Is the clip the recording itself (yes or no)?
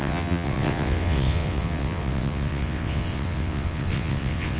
no